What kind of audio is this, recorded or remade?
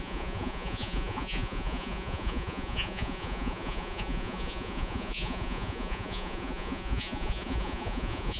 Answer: remade